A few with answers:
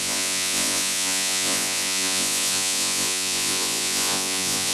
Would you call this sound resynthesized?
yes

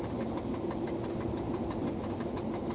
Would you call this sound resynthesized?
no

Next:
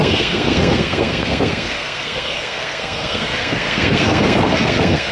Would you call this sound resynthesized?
yes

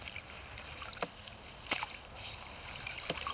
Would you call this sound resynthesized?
yes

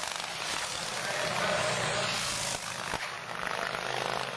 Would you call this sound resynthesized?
no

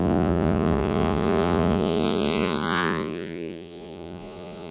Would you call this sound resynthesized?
yes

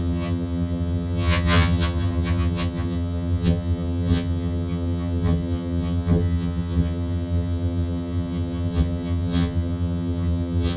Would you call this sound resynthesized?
yes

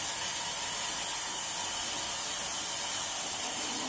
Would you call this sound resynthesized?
no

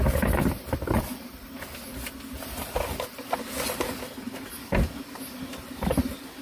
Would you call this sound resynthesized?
no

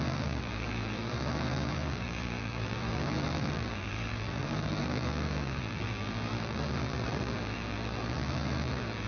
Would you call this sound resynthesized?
yes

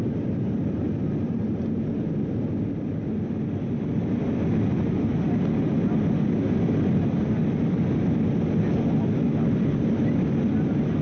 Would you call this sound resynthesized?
no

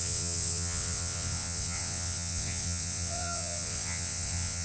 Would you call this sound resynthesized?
yes